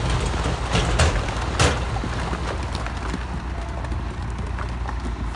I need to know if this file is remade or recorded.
recorded